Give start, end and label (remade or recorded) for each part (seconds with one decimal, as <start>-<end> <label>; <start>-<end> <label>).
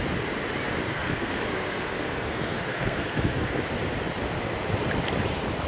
0.0-0.9 recorded; 0.9-3.6 remade; 3.6-5.7 recorded